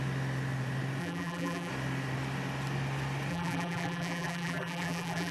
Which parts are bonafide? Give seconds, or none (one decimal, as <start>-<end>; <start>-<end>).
0.0-1.0; 1.7-3.3